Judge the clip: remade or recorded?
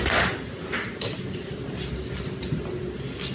recorded